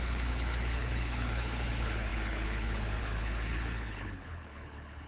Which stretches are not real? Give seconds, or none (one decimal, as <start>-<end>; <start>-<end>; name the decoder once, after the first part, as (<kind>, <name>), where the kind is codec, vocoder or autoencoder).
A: 0.0-5.1 (codec, HILCodec)